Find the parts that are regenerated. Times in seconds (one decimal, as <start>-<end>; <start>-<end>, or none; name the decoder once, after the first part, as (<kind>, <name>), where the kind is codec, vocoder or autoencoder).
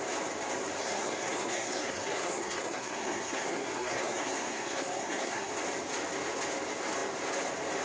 0.8-5.5 (codec, SNAC)